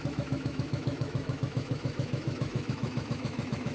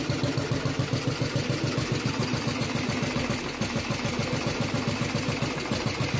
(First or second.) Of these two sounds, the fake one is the first